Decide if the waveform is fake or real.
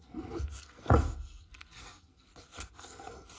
fake